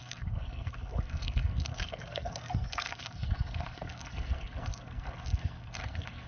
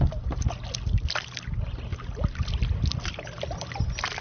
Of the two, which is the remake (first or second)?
first